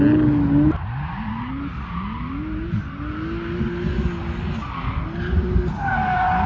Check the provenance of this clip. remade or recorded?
recorded